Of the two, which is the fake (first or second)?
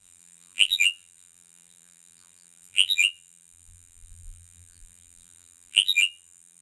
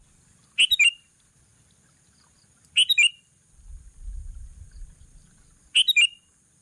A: first